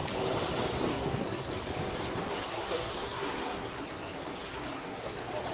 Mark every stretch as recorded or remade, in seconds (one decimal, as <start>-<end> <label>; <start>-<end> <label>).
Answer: 0.0-0.9 recorded; 0.9-1.5 remade; 1.5-2.2 recorded; 2.2-5.1 remade; 5.1-5.5 recorded